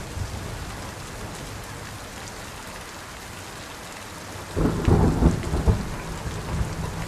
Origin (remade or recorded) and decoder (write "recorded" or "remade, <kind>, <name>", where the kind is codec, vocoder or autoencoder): recorded